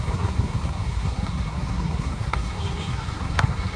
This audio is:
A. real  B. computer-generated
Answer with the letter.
B